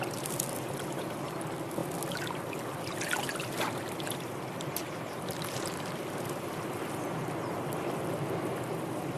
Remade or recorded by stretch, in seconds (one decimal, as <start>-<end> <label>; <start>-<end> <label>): 0.0-9.2 remade